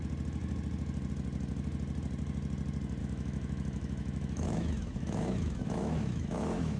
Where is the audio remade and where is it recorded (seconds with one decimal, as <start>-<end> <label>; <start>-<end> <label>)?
0.0-3.0 recorded; 3.0-6.8 remade

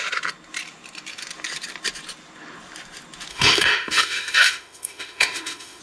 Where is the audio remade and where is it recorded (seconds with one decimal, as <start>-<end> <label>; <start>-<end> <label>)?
0.0-3.3 recorded; 3.3-5.8 remade

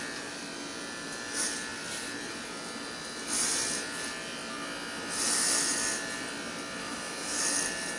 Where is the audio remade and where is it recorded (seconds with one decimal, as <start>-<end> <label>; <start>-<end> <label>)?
0.0-6.8 recorded; 6.8-7.4 remade; 7.4-8.0 recorded

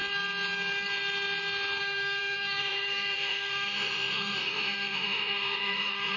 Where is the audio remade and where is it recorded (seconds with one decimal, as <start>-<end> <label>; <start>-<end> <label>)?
0.0-1.8 recorded; 1.8-6.2 remade

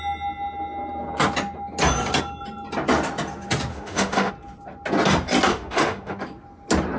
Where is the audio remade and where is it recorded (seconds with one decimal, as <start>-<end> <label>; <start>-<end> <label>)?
0.0-3.7 recorded; 3.7-4.3 remade; 4.3-5.5 recorded; 5.5-6.2 remade; 6.2-7.0 recorded

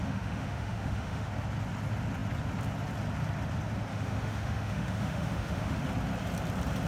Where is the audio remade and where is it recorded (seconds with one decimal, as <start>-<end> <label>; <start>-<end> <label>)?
0.0-1.3 remade; 1.3-3.9 recorded; 3.9-5.8 remade; 5.8-6.9 recorded

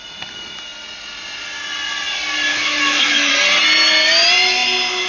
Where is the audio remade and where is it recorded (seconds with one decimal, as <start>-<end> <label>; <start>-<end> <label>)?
0.0-2.5 recorded; 2.5-3.3 remade; 3.3-5.1 recorded

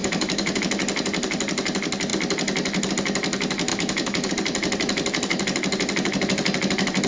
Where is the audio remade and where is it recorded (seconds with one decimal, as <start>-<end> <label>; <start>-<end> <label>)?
0.0-0.6 remade; 0.6-3.7 recorded; 3.7-4.3 remade; 4.3-7.1 recorded